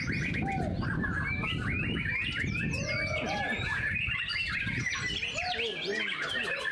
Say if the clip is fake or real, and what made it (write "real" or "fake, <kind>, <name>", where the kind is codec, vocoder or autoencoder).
real